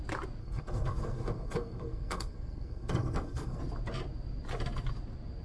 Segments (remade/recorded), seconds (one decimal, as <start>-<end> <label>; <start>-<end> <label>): 0.0-0.4 recorded; 0.4-3.6 remade; 3.6-5.4 recorded